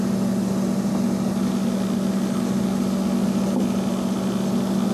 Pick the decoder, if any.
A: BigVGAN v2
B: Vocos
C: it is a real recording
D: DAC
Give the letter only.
C